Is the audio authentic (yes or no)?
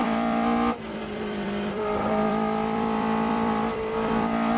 no